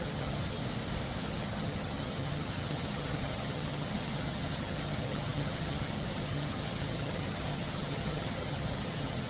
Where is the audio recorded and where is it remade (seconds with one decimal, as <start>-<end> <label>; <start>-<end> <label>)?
0.0-0.6 remade; 0.6-1.2 recorded; 1.2-9.3 remade